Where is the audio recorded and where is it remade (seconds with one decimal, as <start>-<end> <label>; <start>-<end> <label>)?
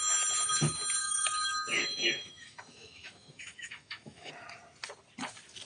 0.0-1.0 recorded; 1.0-4.3 remade; 4.3-5.7 recorded